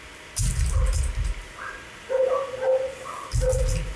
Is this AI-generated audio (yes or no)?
no